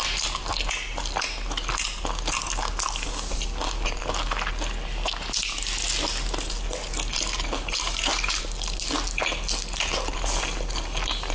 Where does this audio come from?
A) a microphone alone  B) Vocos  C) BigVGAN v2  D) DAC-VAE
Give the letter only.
A